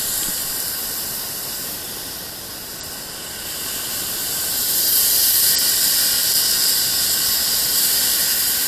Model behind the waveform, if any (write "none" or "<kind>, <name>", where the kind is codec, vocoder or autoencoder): none